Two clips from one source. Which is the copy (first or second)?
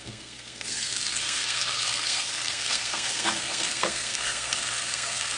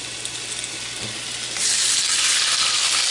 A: first